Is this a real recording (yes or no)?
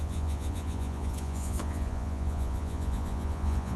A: no